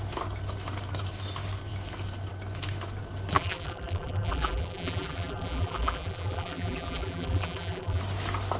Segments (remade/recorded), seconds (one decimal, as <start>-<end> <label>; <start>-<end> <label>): 0.0-3.3 recorded; 3.3-8.0 remade; 8.0-8.6 recorded